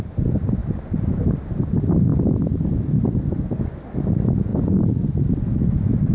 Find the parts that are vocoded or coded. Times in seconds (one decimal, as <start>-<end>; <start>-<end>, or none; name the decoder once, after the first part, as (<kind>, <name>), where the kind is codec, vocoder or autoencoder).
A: 0.6-1.6 (vocoder, BigVGAN v2)